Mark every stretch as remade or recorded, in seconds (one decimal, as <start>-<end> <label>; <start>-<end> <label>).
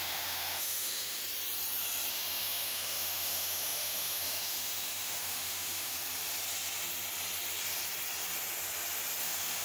0.0-1.2 remade; 1.2-2.1 recorded; 2.1-5.9 remade; 5.9-9.2 recorded; 9.2-9.6 remade